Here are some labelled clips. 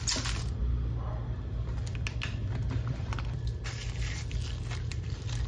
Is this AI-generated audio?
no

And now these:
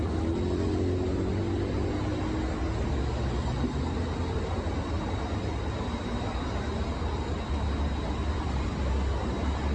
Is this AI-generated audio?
no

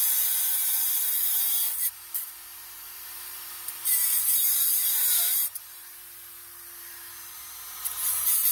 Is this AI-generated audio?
yes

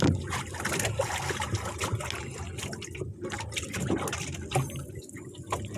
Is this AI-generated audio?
no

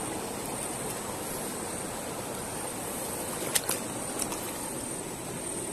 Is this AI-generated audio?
no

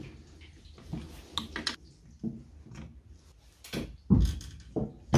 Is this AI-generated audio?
no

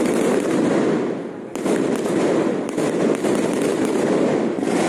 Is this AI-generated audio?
yes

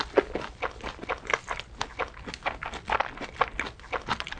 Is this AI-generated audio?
no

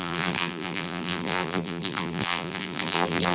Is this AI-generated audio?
yes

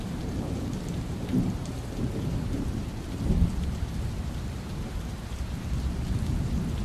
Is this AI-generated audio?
yes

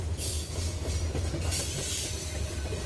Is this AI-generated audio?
no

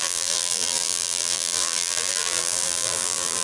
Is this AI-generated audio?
yes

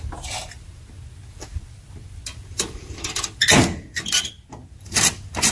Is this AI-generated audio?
no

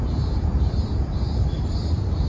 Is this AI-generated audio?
yes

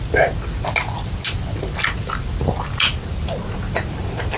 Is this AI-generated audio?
no